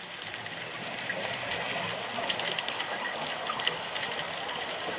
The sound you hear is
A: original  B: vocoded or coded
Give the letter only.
A